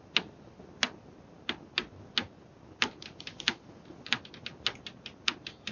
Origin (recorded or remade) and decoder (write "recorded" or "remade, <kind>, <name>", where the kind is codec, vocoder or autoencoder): recorded